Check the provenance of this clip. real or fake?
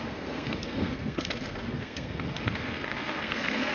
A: fake